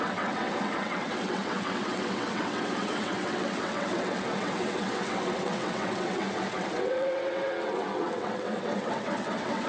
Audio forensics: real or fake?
fake